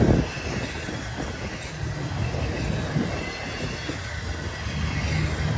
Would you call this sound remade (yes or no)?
no